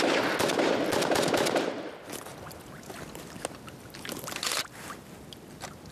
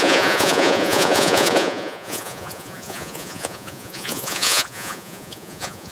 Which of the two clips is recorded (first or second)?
first